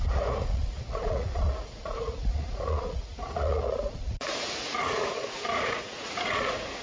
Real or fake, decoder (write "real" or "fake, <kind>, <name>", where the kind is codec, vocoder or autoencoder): fake, vocoder, Vocos